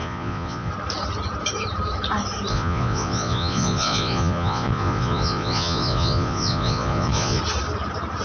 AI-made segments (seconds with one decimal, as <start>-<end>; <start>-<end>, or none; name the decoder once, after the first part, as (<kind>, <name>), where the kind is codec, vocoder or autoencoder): 0.0-0.7 (vocoder, Vocos); 2.5-7.4

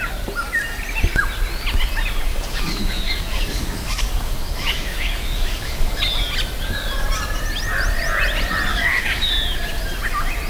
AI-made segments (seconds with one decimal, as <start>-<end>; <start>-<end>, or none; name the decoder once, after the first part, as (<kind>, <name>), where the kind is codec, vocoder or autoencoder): 2.3-6.0 (codec, DAC); 8.7-9.3

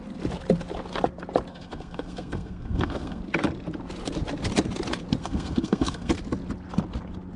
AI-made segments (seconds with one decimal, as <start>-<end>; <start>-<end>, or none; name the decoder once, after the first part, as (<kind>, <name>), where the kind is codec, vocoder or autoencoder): 1.5-3.2 (codec, SNAC); 5.2-6.1

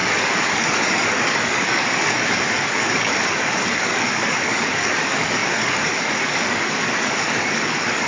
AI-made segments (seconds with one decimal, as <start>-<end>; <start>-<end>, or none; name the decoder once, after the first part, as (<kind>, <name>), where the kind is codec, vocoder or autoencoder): 0.0-8.1 (codec, DAC)

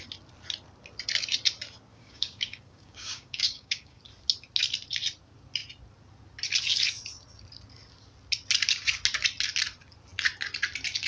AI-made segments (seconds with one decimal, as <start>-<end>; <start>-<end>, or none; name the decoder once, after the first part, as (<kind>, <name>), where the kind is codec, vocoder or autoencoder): 1.9-4.0 (codec, DAC)